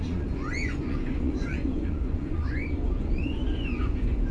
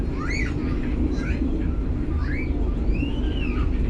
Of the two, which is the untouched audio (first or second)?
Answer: second